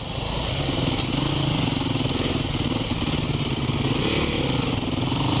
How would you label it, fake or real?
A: real